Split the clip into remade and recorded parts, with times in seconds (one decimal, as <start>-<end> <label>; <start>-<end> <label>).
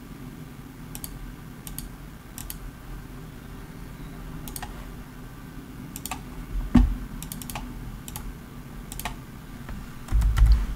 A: 0.0-10.8 recorded